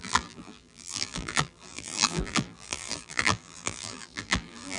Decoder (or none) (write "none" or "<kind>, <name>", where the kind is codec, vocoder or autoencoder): vocoder, BigVGAN v2